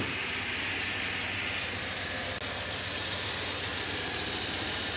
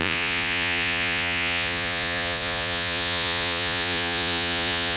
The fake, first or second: second